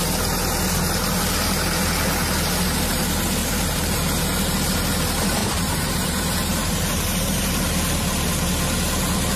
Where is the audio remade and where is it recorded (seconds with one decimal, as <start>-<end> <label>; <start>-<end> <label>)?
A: 0.0-3.4 recorded; 3.4-3.9 remade; 3.9-5.4 recorded; 5.4-7.4 remade; 7.4-9.4 recorded